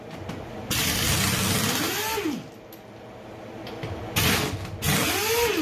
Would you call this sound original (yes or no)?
yes